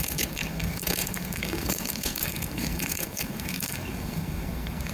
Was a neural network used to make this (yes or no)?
yes